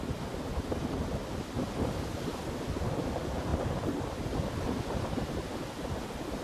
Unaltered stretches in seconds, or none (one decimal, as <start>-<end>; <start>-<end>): 0.0-6.4